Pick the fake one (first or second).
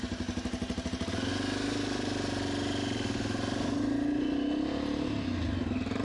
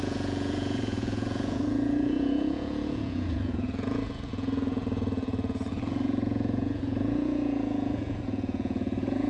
second